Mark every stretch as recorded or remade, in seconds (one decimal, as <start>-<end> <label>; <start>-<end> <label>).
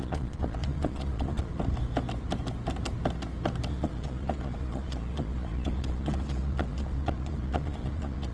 0.0-1.5 remade; 1.5-3.7 recorded; 3.7-8.3 remade